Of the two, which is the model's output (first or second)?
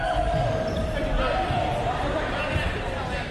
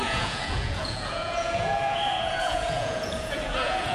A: second